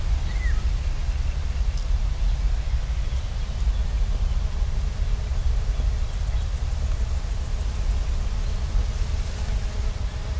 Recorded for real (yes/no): yes